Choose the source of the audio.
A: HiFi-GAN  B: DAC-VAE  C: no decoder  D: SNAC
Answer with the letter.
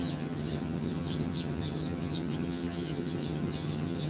A